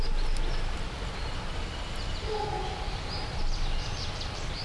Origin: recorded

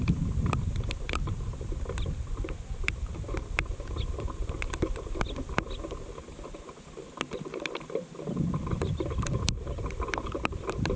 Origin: recorded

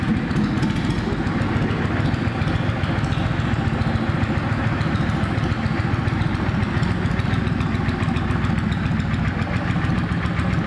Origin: recorded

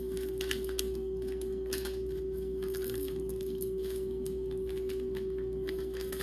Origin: remade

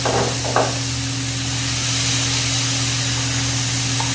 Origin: recorded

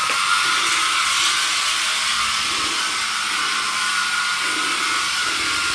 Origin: recorded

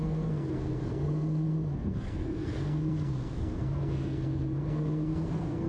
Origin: remade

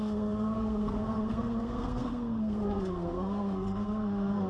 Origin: remade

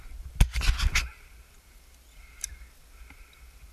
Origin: recorded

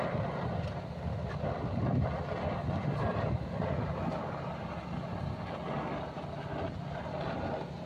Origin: recorded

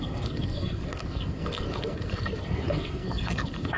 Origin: remade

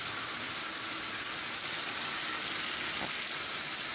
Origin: recorded